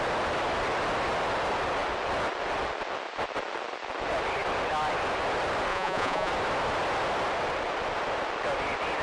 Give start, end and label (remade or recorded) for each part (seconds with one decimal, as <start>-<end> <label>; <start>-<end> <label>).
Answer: 0.0-5.7 recorded; 5.7-6.3 remade; 6.3-9.0 recorded